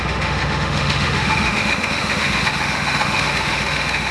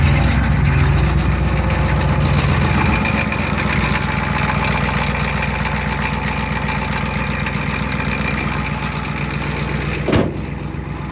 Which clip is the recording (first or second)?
second